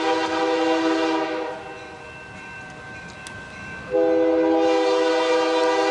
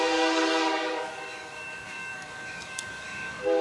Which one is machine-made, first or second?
second